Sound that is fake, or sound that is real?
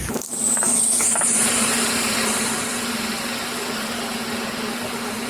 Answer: fake